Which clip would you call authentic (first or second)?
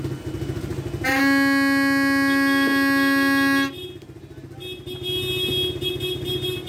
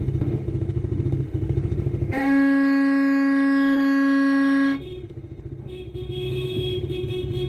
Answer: first